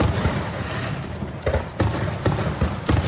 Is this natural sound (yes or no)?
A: yes